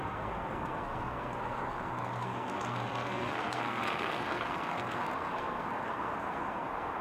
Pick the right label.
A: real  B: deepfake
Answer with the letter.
B